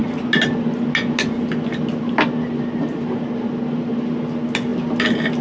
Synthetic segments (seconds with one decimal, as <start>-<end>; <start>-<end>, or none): none